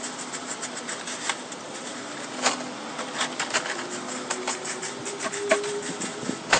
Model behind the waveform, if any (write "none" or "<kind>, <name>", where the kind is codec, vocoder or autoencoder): none